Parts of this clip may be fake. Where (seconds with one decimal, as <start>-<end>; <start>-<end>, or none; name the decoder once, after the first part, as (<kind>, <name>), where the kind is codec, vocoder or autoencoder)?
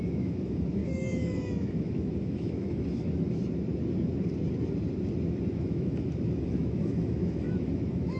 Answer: 0.0-3.4 (autoencoder, DAC-VAE); 5.5-8.2